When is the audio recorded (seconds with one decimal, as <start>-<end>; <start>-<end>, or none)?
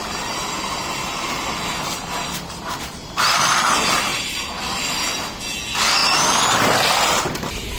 0.0-2.0; 3.6-4.1; 4.6-7.8